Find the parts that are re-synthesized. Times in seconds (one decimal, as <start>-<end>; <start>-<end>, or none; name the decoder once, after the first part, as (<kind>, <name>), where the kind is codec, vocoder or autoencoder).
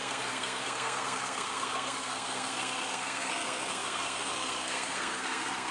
0.0-5.7 (codec, SNAC)